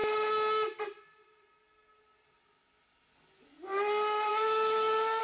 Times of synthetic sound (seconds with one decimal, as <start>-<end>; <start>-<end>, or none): 4.3-5.2